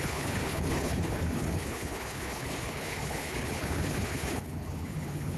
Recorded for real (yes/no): no